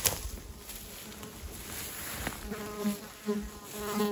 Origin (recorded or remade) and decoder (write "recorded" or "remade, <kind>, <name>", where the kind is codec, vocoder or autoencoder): recorded